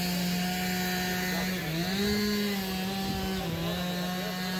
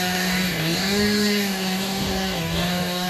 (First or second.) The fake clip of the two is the second